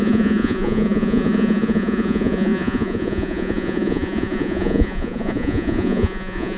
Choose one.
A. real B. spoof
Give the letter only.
B